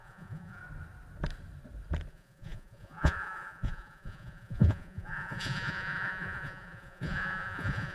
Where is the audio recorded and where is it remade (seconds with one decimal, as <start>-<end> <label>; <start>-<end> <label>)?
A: 0.0-0.6 remade; 0.6-2.1 recorded; 2.1-7.9 remade